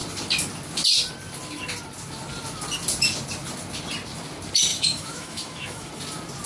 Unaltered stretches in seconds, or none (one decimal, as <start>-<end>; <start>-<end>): 0.0-4.7; 5.9-6.5